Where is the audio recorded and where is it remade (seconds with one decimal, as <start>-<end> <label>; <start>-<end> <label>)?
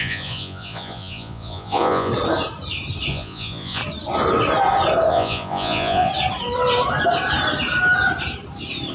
0.0-2.1 remade; 2.1-3.1 recorded; 3.1-3.8 remade; 3.8-5.1 recorded; 5.1-6.1 remade; 6.1-8.9 recorded